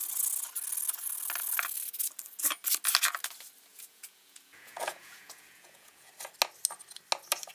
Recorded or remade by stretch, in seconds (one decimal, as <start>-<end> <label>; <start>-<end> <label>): 0.0-3.7 recorded; 3.7-6.1 remade; 6.1-7.5 recorded